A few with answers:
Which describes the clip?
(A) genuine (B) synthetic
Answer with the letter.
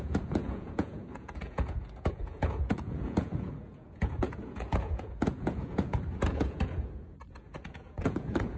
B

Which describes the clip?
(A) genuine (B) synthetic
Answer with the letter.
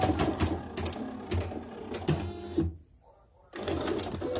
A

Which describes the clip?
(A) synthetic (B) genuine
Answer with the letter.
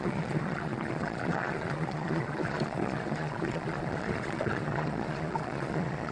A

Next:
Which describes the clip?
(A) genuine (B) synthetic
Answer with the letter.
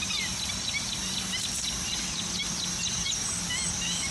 A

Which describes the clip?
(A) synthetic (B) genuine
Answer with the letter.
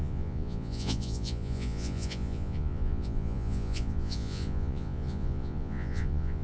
A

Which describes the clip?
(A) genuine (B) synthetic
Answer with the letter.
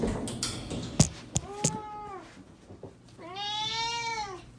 A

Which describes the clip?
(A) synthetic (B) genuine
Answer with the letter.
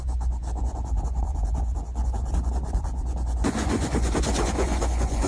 A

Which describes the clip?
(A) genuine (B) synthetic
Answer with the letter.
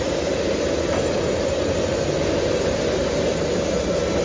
A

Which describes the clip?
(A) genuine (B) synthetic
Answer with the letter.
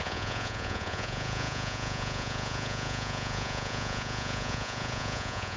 B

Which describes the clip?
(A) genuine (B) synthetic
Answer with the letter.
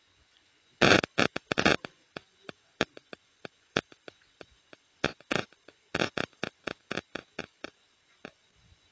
B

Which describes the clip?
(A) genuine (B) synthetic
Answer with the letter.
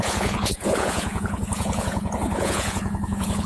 B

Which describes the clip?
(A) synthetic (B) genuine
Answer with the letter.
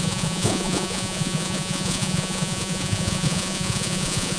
A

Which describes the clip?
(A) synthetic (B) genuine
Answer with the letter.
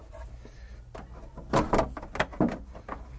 B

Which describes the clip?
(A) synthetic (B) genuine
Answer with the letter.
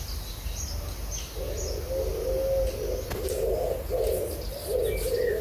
B